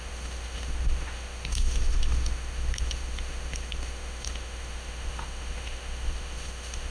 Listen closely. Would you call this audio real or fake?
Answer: fake